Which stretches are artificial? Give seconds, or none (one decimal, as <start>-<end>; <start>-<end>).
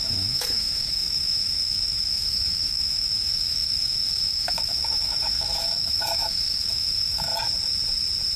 0.0-7.3